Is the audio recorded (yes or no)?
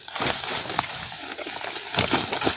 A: yes